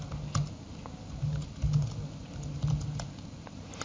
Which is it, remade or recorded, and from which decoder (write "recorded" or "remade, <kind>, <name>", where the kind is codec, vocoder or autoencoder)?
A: recorded